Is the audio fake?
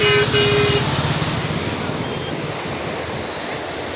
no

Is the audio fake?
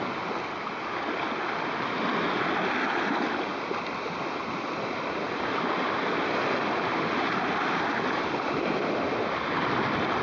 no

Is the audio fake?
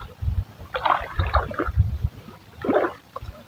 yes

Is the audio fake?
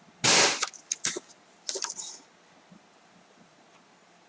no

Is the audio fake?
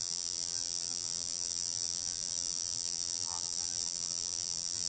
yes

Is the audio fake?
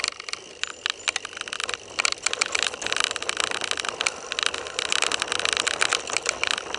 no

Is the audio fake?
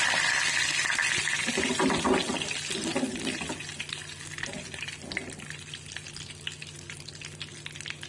no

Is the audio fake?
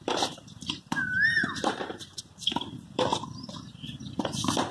yes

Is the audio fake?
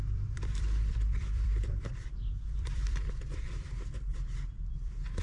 yes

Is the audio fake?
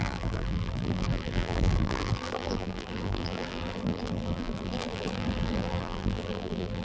yes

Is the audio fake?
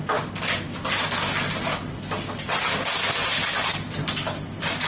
no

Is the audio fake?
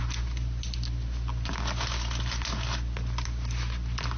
no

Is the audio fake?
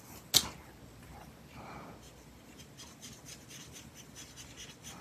no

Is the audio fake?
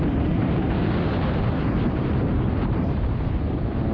yes